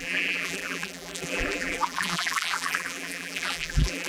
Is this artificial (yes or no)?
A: yes